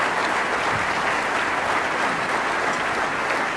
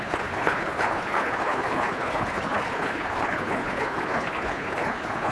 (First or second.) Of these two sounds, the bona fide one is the first